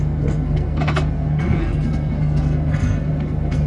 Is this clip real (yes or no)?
no